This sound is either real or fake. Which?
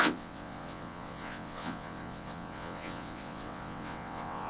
fake